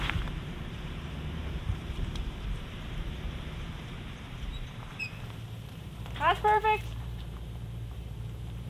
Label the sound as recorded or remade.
remade